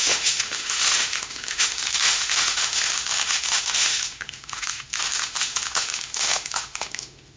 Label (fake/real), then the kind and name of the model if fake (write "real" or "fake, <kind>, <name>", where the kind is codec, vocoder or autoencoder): fake, autoencoder, DAC-VAE